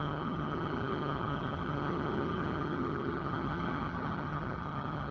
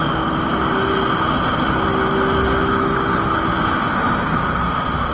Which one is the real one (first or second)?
second